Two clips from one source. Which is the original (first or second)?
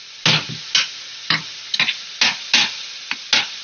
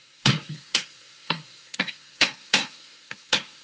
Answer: first